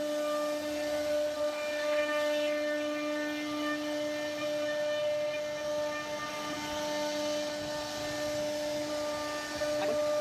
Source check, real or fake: real